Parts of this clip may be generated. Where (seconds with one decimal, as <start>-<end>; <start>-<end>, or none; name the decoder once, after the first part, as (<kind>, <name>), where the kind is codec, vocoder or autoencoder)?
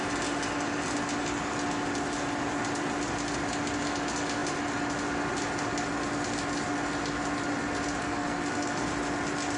8.0-8.9 (codec, SNAC)